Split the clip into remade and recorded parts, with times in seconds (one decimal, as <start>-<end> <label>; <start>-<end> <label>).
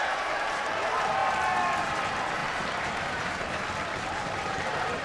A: 0.0-1.2 remade; 1.2-1.8 recorded; 1.8-5.0 remade